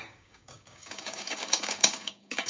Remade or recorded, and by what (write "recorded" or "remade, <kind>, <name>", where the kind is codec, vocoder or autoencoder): remade, codec, DAC